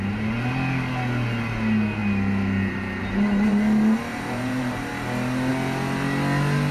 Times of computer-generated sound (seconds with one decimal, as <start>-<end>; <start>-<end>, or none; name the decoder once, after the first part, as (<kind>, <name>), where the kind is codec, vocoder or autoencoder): 4.1-4.9 (vocoder, BigVGAN v2)